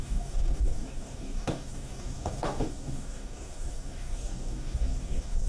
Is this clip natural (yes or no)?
no